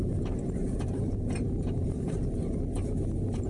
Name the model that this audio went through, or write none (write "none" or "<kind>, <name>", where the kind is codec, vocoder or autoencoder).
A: vocoder, BigVGAN v2